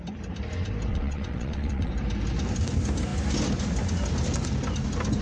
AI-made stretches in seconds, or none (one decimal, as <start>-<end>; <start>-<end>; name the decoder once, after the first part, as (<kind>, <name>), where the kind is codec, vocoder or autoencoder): 0.9-1.9 (vocoder, WaveNeXt)